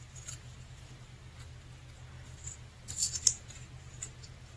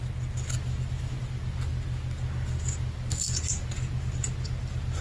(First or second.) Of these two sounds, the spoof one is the first